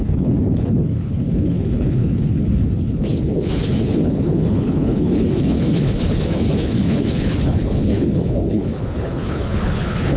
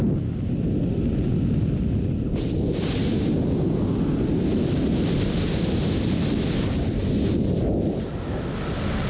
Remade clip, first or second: first